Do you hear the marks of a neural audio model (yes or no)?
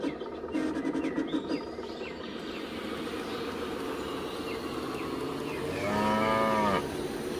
no